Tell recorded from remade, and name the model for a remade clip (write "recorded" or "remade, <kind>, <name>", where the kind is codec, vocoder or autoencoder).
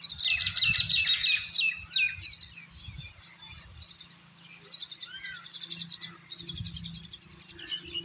recorded